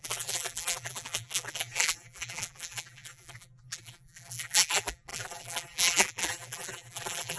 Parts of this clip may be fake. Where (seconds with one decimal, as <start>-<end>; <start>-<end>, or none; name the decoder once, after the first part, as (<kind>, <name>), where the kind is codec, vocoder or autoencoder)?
0.0-7.4 (vocoder, BigVGAN v2)

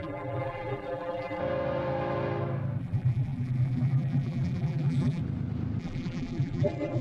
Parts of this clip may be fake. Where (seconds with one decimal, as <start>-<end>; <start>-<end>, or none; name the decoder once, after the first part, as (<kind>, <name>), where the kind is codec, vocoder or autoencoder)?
0.0-1.4 (vocoder, BigVGAN v2); 2.8-5.2; 5.8-7.0

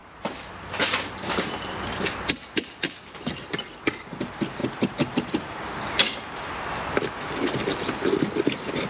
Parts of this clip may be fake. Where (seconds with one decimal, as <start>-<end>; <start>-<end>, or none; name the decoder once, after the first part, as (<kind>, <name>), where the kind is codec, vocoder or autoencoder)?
4.6-6.4 (vocoder, BigVGAN v2)

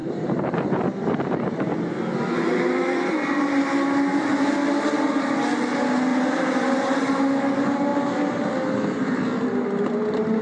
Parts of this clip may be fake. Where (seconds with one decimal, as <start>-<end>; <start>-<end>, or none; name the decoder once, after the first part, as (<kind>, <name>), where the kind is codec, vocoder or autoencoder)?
0.0-3.1 (vocoder, BigVGAN v2); 6.1-7.2; 7.9-8.5